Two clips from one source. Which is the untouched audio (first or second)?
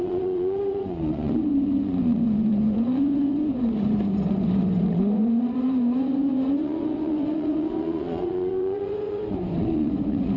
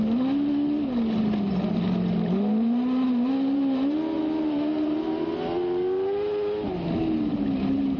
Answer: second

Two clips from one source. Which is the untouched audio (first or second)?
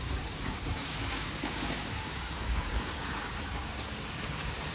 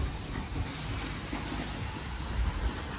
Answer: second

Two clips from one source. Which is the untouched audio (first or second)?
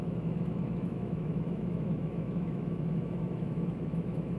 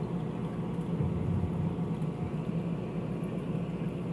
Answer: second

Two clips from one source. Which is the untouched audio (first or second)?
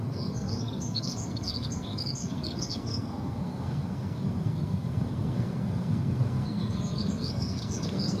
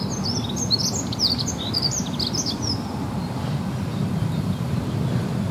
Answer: second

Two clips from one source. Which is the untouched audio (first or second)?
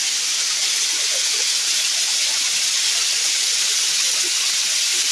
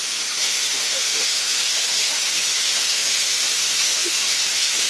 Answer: first